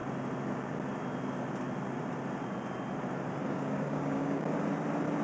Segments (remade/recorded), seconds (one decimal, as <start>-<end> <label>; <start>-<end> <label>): 0.0-3.4 recorded; 3.4-4.5 remade; 4.5-5.2 recorded